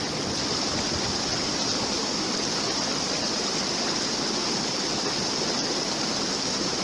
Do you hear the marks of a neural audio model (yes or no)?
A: no